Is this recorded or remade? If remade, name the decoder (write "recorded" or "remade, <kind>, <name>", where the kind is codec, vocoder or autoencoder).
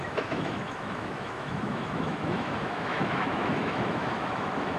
remade, autoencoder, DAC-VAE